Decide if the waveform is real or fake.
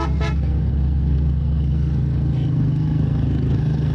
fake